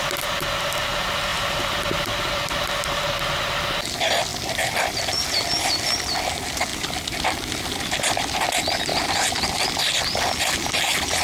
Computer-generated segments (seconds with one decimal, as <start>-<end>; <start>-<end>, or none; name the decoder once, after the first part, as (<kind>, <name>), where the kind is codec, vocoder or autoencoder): 1.3-2.3 (vocoder, BigVGAN v2); 4.3-5.5; 6.7-8.5; 8.9-9.7